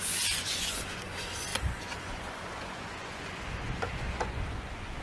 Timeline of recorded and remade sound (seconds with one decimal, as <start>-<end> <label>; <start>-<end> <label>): 0.0-5.0 remade